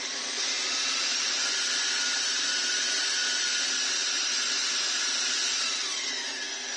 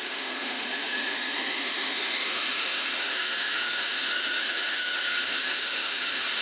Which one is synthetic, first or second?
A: second